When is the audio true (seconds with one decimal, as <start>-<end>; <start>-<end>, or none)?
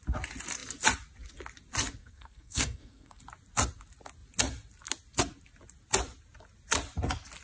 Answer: 0.0-2.0; 3.2-7.4